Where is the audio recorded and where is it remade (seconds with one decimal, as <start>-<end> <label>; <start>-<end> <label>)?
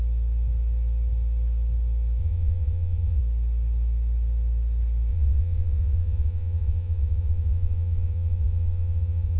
0.0-2.2 recorded; 2.2-3.2 remade; 3.2-5.1 recorded; 5.1-9.4 remade